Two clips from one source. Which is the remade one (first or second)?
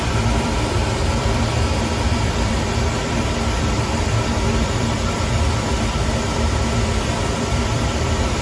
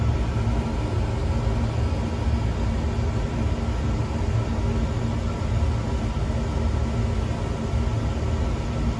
first